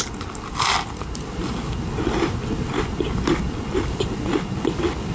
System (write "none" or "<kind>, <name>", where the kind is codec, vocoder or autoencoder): none